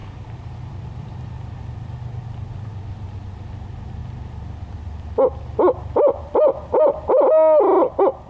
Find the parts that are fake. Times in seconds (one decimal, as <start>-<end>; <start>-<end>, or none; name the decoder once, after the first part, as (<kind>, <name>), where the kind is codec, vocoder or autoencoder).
0.0-2.7 (vocoder, BigVGAN v2)